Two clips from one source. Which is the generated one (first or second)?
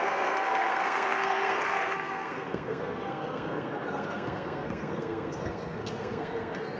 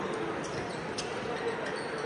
first